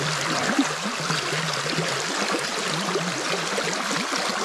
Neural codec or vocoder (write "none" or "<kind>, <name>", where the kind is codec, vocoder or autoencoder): none